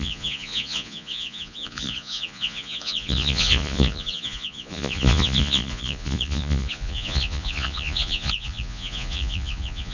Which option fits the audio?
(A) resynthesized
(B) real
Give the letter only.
A